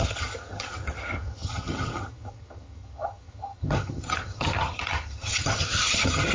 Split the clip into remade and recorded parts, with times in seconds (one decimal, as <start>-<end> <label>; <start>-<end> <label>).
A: 0.0-6.3 remade